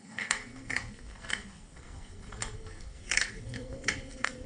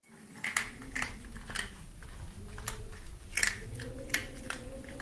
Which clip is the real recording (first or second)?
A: second